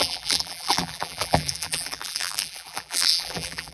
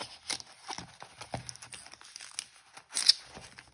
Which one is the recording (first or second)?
second